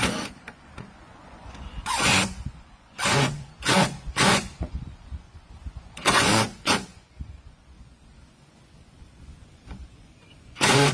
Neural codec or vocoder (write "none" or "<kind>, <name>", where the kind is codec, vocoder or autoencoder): vocoder, Vocos